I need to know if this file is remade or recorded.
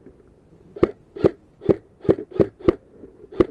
recorded